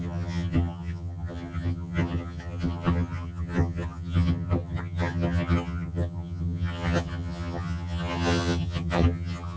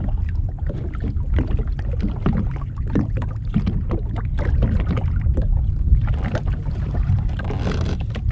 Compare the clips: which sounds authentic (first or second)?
second